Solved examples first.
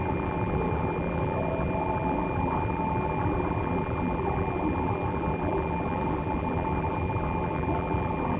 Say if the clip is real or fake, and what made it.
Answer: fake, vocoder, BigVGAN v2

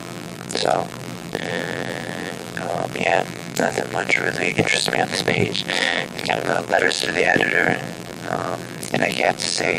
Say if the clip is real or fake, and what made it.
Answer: fake, vocoder, BigVGAN v2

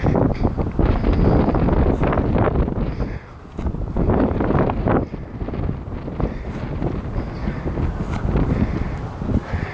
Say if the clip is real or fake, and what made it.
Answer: real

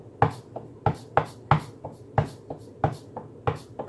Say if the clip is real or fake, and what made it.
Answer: real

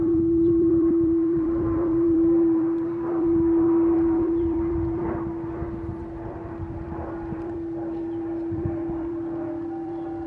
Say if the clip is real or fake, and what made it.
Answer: fake, vocoder, BigVGAN v2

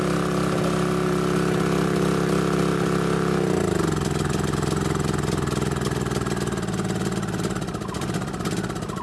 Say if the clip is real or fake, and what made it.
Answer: real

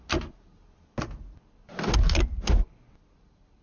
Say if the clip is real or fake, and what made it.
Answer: real